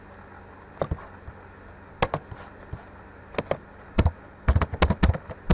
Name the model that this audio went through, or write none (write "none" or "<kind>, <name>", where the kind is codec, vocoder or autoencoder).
none